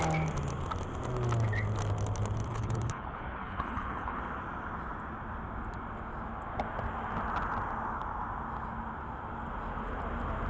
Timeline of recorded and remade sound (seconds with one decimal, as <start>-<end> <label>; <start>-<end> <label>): 0.0-2.5 recorded; 2.5-4.2 remade; 4.2-10.5 recorded